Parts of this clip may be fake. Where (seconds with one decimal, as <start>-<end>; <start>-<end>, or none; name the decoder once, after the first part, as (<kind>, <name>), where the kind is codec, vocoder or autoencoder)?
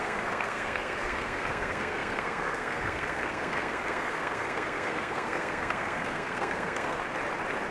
0.0-7.0 (codec, SNAC)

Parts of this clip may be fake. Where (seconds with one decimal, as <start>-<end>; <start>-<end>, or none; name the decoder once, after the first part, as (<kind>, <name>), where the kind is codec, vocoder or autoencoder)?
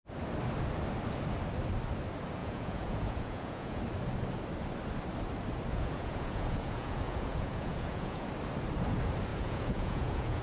2.4-3.8 (vocoder, Vocos); 5.7-8.3; 9.3-10.4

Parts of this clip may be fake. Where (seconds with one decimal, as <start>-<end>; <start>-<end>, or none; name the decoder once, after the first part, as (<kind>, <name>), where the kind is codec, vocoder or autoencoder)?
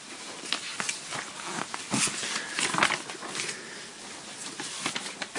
none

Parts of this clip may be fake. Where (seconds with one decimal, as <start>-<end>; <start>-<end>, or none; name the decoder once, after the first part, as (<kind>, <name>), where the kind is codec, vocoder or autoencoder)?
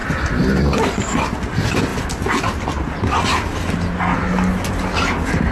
none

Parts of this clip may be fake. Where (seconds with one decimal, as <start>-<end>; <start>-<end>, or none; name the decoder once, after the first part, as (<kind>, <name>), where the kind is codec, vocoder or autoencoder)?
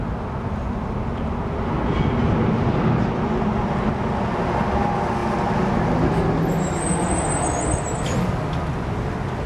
none